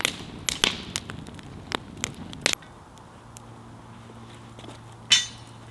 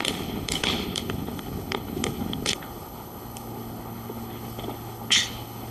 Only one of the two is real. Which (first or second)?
first